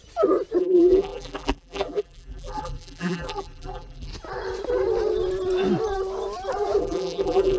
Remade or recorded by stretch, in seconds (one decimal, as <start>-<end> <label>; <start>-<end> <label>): 0.0-0.6 recorded; 0.6-4.1 remade; 4.1-6.8 recorded; 6.8-7.6 remade